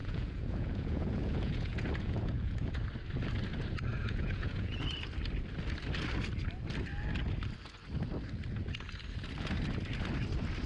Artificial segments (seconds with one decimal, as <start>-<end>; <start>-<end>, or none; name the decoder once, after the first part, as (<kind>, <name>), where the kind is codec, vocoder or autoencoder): 0.0-2.7 (vocoder, Vocos); 3.9-4.8